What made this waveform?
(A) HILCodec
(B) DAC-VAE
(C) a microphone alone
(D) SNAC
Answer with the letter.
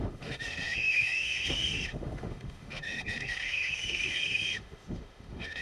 B